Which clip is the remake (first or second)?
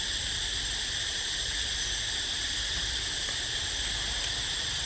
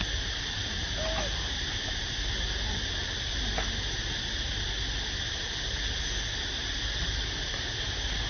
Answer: first